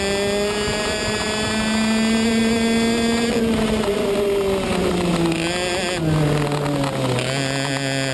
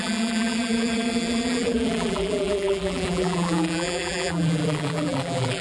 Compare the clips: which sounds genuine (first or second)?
first